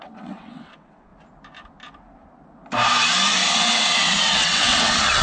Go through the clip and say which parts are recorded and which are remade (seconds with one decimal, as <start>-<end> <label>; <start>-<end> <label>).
0.0-1.1 remade; 1.1-3.5 recorded; 3.5-5.2 remade